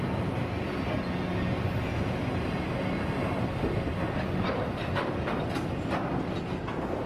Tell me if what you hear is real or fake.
real